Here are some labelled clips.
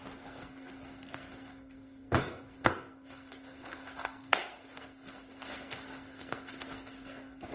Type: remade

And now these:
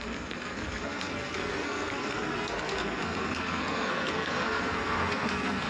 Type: remade